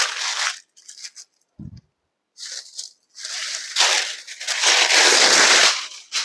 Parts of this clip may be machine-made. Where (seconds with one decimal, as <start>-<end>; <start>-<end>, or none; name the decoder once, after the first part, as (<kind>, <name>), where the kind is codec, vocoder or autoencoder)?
none